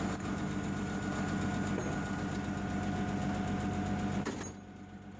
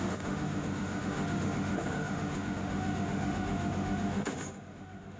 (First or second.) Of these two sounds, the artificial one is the second